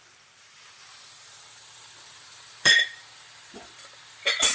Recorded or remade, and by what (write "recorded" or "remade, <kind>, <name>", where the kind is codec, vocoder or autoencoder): remade, vocoder, BigVGAN v2